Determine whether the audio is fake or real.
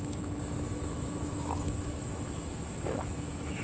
fake